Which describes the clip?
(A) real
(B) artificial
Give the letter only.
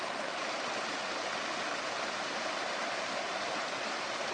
B